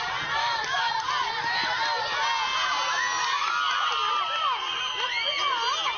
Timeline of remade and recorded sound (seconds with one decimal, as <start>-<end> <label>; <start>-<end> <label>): 0.0-0.4 recorded; 0.4-0.9 remade; 0.9-6.0 recorded